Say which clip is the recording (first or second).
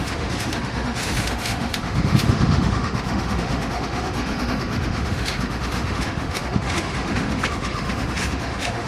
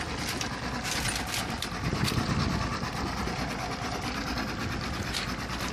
second